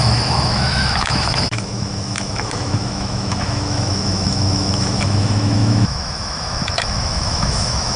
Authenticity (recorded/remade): remade